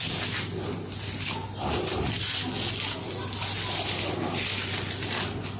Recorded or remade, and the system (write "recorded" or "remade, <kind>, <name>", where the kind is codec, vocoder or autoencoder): recorded